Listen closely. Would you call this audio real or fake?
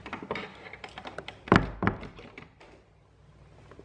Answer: real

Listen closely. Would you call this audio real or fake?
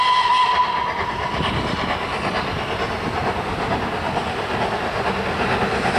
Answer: real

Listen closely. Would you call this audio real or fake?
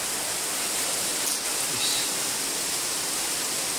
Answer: real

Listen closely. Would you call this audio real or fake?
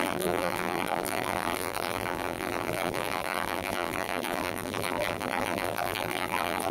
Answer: fake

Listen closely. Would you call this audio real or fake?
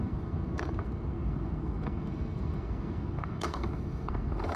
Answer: fake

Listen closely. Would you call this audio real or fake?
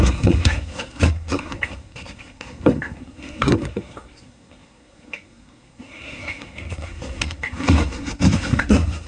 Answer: fake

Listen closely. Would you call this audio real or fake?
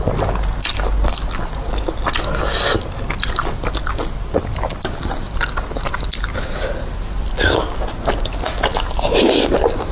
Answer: real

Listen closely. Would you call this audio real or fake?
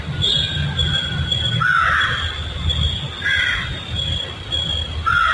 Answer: real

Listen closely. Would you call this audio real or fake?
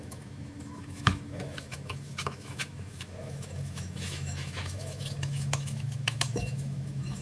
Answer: fake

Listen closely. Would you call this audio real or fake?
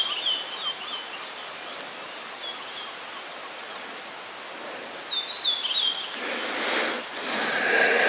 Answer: real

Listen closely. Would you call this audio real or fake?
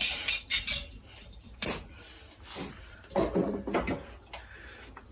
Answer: real